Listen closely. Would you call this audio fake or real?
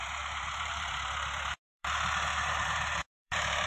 fake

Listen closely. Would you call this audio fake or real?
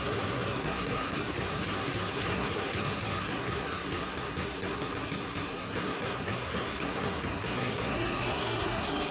fake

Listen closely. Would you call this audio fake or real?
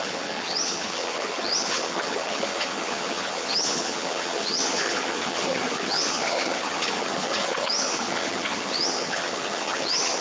fake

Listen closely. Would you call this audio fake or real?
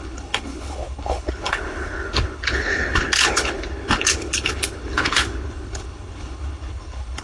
fake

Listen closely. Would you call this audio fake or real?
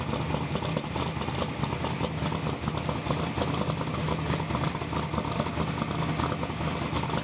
real